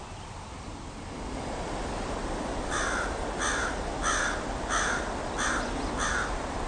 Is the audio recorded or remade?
recorded